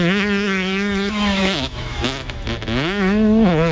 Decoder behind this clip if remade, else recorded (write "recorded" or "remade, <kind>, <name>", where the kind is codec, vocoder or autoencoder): remade, autoencoder, DAC-VAE